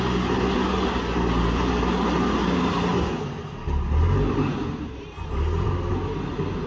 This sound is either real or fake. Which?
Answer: real